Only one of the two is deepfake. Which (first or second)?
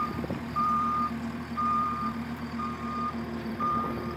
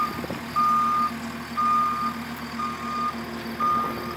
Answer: first